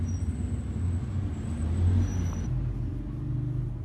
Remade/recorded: recorded